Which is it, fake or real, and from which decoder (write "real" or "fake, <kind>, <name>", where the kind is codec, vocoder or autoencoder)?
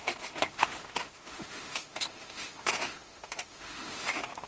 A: fake, autoencoder, DAC-VAE